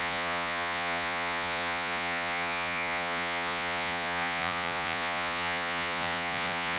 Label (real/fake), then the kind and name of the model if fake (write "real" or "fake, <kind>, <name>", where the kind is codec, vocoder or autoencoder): fake, vocoder, Vocos